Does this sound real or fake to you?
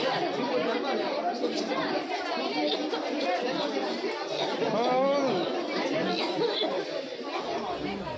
real